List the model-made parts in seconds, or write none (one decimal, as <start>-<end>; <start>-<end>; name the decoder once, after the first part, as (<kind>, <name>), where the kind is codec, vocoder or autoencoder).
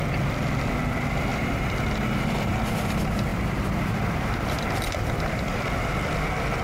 1.3-2.0 (vocoder, BigVGAN v2)